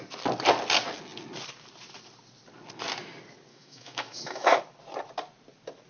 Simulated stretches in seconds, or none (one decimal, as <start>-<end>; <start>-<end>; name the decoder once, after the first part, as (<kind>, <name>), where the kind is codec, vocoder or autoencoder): 3.5-4.6 (autoencoder, DAC-VAE)